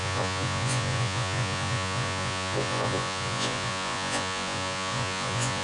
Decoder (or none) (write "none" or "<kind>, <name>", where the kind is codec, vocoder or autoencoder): vocoder, Vocos